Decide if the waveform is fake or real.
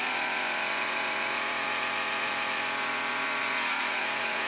fake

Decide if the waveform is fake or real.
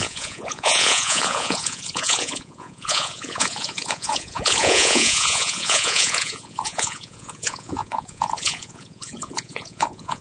fake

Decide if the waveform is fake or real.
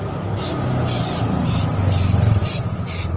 real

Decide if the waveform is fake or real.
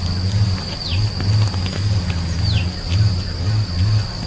real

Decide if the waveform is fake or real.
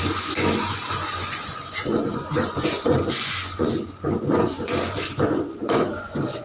fake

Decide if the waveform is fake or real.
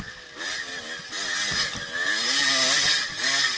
real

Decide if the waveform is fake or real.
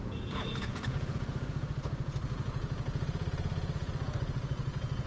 fake